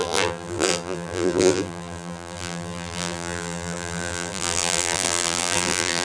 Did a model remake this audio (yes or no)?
yes